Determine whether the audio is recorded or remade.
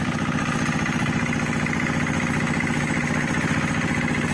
recorded